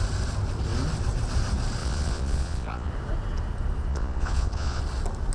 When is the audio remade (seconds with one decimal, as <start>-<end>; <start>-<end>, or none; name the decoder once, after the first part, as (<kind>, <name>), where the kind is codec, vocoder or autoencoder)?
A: 1.8-2.9 (vocoder, Vocos); 3.9-4.8